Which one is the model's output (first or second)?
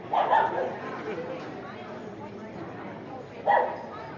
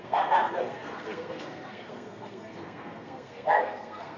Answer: second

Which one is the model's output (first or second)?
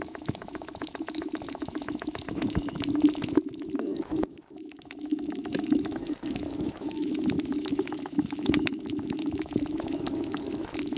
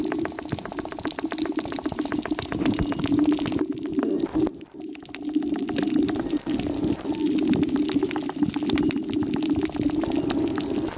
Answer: first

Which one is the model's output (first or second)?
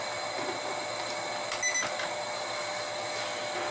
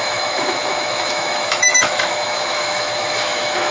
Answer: second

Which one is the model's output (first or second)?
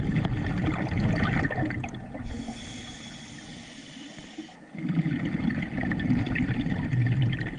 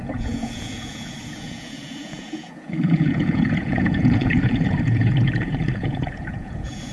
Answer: second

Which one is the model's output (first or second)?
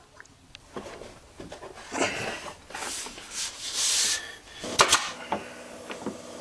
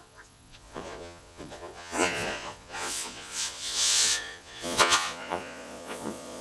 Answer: second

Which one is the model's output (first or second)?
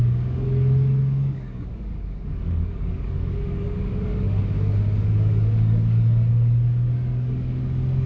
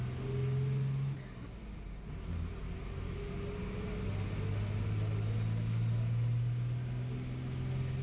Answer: first